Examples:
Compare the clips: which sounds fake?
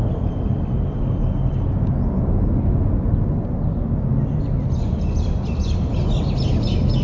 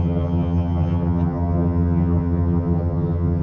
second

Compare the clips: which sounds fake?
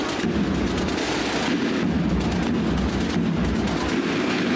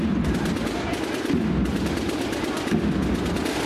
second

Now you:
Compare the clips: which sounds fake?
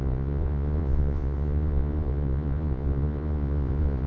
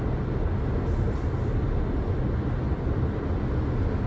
first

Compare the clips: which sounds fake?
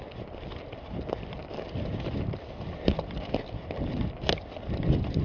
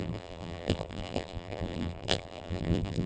second